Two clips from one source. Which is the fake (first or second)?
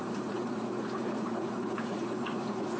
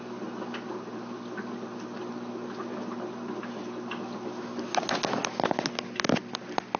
first